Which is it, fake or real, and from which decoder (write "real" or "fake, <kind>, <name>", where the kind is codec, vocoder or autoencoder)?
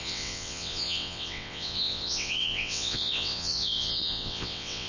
fake, vocoder, WaveNeXt